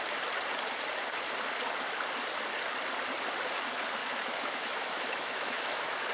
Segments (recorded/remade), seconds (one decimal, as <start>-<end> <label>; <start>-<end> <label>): 0.0-4.0 recorded; 4.0-6.1 remade